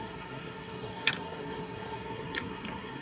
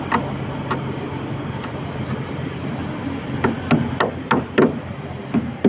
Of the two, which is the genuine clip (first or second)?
second